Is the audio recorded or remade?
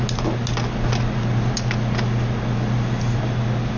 recorded